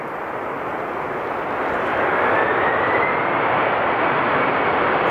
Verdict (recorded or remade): recorded